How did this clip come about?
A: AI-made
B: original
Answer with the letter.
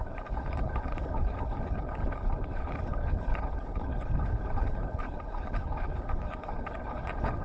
A